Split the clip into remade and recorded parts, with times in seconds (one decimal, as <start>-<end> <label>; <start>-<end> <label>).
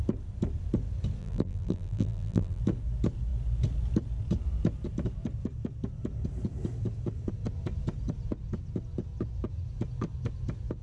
0.0-1.2 recorded; 1.2-2.6 remade; 2.6-10.8 recorded